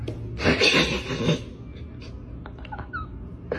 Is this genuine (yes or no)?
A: yes